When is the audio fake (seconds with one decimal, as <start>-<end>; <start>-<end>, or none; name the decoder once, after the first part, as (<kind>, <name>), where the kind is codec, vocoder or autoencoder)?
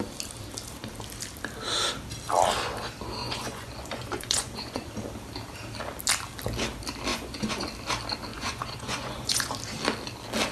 3.2-4.9 (vocoder, Vocos); 7.1-7.6; 8.3-9.5